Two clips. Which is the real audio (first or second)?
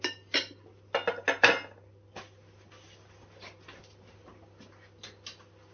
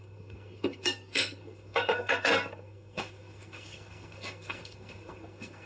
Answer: first